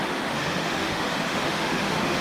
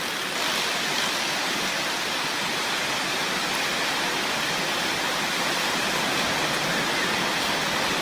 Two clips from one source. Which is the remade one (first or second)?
first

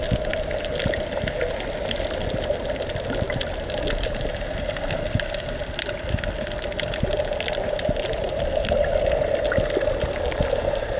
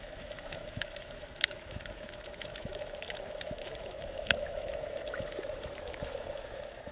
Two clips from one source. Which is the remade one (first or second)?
second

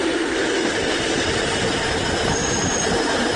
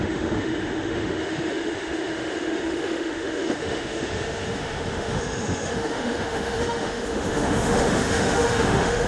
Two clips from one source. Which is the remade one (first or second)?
second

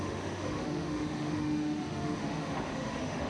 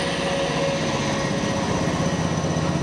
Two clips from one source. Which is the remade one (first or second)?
first